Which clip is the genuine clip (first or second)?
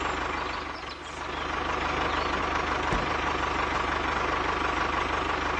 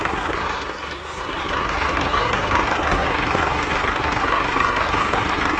first